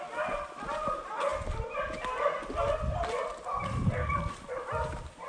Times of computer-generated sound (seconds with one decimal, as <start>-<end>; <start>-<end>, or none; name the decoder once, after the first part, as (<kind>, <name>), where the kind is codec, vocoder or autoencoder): none